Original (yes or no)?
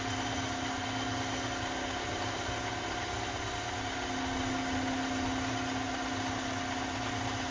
yes